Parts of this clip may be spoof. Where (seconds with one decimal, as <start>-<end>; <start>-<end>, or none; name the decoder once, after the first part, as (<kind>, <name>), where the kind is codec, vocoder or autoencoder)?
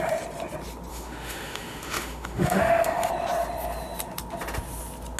0.9-3.1 (autoencoder, DAC-VAE)